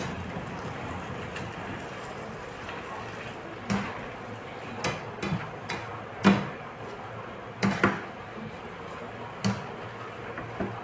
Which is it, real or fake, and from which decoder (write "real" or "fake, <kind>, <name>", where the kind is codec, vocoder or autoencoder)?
real